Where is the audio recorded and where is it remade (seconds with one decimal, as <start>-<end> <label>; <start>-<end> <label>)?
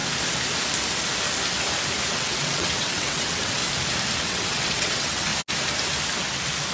0.0-2.1 recorded; 2.1-3.6 remade; 3.6-4.2 recorded; 4.2-5.3 remade; 5.3-6.7 recorded